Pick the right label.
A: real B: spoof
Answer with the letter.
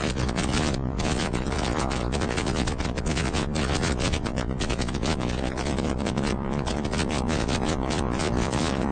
B